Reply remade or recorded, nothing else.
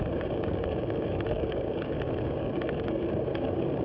remade